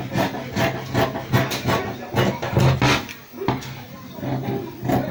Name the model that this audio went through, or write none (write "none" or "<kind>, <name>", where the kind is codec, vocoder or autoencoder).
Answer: none